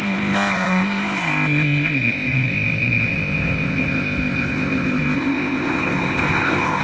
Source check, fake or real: fake